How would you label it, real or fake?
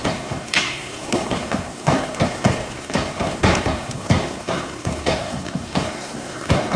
fake